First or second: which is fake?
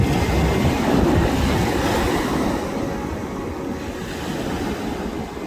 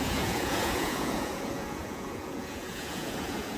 second